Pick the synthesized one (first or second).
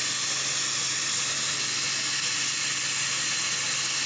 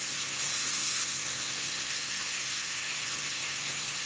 second